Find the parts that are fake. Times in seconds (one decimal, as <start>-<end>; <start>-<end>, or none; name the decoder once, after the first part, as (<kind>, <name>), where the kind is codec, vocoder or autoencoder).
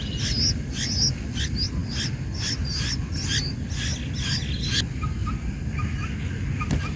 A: none